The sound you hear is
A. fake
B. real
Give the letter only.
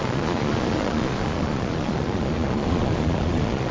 A